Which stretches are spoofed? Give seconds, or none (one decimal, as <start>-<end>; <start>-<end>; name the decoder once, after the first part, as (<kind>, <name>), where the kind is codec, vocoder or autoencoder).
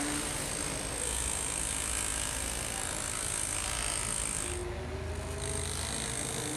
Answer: none